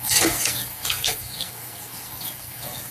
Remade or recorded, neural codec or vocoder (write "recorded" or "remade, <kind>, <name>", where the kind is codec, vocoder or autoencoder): remade, codec, SNAC